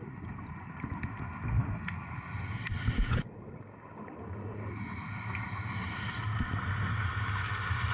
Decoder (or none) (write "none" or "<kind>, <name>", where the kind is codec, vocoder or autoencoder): none